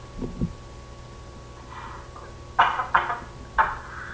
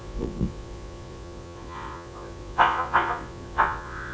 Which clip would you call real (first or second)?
first